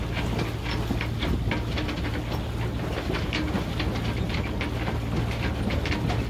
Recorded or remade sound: recorded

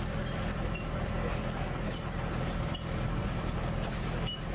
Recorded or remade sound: recorded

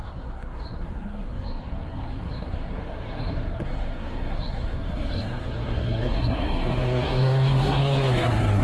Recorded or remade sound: remade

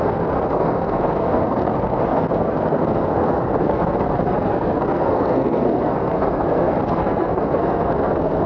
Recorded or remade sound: remade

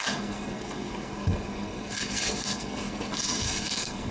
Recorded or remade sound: remade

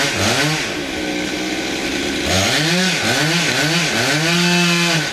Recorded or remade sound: recorded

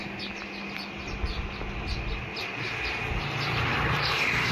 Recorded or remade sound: recorded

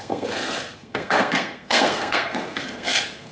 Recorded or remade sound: remade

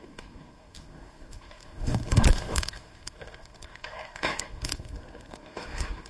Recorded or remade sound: remade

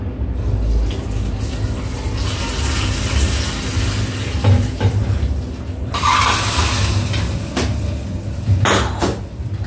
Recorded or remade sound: recorded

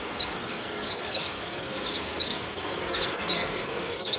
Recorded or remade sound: remade